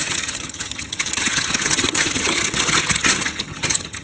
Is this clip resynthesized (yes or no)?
yes